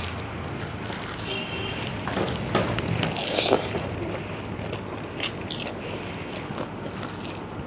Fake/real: real